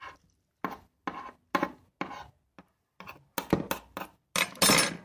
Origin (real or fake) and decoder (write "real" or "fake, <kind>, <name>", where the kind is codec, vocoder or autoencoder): real